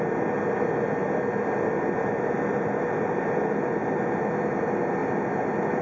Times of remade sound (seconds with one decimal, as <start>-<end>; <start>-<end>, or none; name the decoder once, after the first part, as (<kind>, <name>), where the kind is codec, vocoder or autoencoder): none